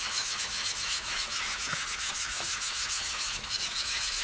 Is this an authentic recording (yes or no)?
no